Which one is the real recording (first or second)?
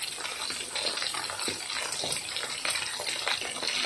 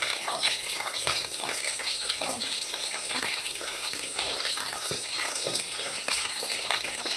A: first